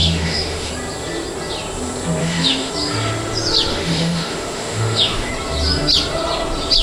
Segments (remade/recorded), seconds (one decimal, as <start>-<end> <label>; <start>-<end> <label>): 0.0-0.7 remade; 0.7-2.2 recorded; 2.2-2.7 remade; 2.7-3.7 recorded; 3.7-5.3 remade; 5.3-6.8 recorded